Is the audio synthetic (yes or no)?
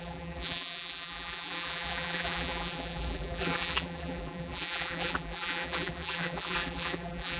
yes